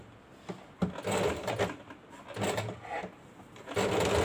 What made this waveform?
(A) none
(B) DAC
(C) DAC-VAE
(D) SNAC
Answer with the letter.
A